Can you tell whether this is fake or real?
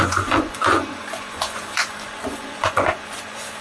fake